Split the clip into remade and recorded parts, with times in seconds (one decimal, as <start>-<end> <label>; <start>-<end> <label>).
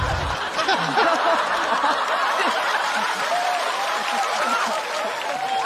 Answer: 0.0-5.7 recorded